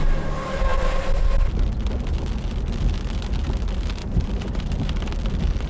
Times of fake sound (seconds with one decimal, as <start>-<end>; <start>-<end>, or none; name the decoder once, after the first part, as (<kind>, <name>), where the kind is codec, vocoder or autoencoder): 4.0-5.1 (vocoder, BigVGAN v2)